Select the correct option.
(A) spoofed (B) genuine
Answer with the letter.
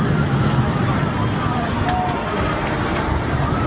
B